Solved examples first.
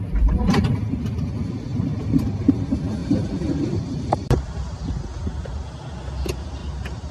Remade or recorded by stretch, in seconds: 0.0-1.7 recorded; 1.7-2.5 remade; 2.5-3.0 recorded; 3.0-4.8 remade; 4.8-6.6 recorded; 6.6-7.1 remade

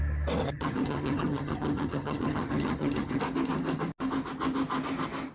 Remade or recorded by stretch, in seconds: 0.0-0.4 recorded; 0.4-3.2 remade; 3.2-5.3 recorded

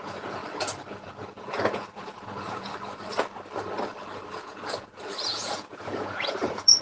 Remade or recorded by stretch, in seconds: 0.0-0.4 remade; 0.4-0.9 recorded; 0.9-2.7 remade; 2.7-4.3 recorded; 4.3-6.8 remade